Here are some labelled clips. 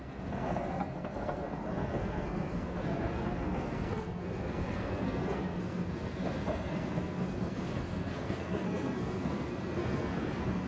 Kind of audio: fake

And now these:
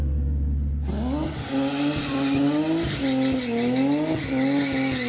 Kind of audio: real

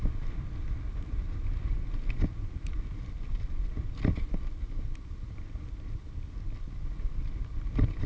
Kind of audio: real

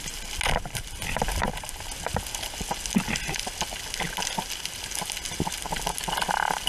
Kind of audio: real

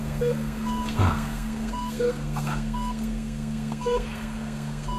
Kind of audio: fake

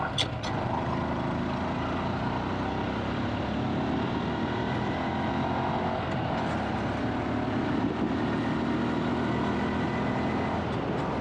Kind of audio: real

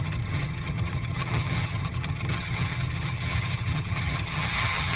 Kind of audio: fake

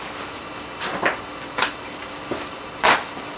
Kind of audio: real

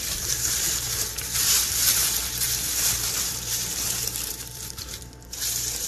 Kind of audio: fake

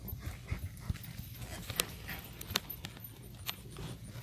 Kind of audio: real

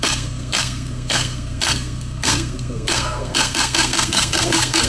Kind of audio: fake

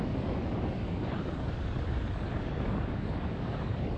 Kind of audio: fake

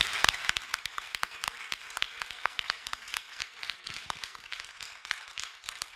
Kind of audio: fake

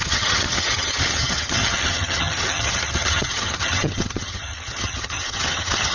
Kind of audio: fake